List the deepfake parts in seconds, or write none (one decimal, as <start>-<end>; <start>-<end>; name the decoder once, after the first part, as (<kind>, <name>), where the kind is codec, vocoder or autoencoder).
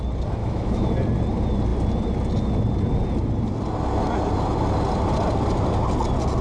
0.4-0.9 (autoencoder, DAC-VAE)